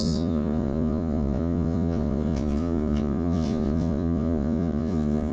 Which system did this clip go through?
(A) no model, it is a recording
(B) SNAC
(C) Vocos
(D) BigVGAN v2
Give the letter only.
C